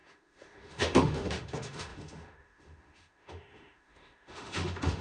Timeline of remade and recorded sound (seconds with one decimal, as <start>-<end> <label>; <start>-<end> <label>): 0.0-5.0 remade